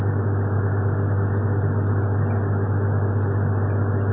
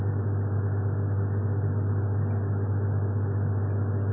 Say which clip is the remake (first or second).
first